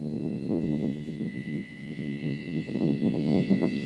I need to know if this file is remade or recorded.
remade